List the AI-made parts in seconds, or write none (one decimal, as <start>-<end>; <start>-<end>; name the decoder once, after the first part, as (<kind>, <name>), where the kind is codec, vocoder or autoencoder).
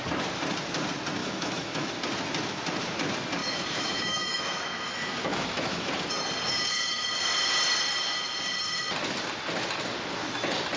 1.2-1.9 (autoencoder, DAC-VAE); 3.4-5.9